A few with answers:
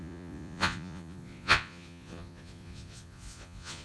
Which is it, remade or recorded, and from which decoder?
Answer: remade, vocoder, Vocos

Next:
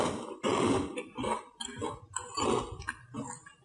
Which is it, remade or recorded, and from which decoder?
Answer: recorded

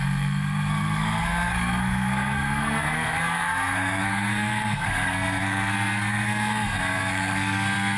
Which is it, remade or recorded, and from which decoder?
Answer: remade, codec, SNAC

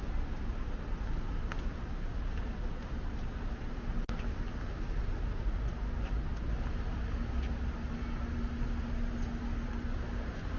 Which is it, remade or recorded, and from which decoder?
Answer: recorded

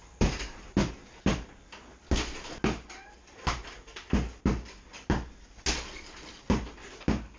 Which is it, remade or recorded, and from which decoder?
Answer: recorded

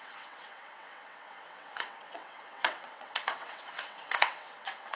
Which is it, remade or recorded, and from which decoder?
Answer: remade, vocoder, WaveNeXt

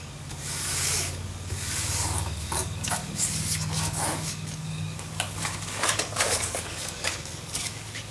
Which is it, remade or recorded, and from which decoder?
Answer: remade, codec, DAC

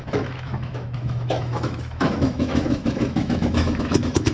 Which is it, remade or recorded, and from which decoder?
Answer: remade, autoencoder, DAC-VAE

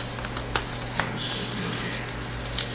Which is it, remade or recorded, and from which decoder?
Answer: recorded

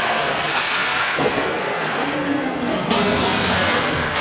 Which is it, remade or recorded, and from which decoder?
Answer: remade, codec, SNAC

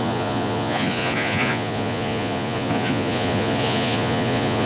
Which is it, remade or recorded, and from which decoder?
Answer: remade, vocoder, Vocos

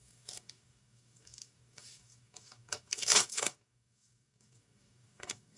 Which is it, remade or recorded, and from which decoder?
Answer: remade, codec, DAC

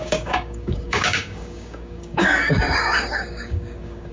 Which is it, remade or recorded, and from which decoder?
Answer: remade, codec, DAC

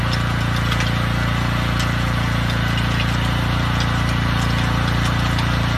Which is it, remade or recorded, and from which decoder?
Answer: recorded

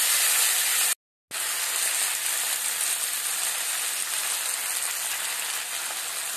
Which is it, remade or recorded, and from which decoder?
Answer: recorded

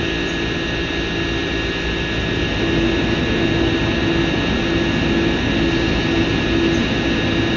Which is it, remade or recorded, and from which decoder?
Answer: recorded